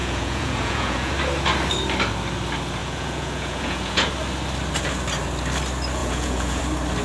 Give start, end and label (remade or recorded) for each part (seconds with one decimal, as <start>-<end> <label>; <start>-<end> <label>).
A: 0.0-1.1 remade; 1.1-2.8 recorded; 2.8-4.1 remade; 4.1-6.0 recorded; 6.0-6.6 remade; 6.6-7.0 recorded